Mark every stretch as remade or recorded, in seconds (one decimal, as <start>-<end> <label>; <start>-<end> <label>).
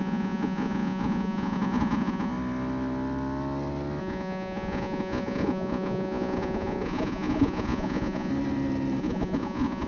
0.0-2.3 remade; 2.3-4.0 recorded; 4.0-8.3 remade; 8.3-9.0 recorded; 9.0-9.9 remade